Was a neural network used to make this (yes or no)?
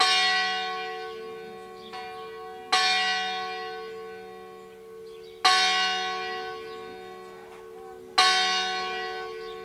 no